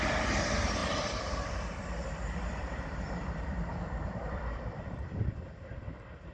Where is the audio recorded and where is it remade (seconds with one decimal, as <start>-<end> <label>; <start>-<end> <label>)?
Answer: 0.0-0.8 recorded; 0.8-4.6 remade; 4.6-6.3 recorded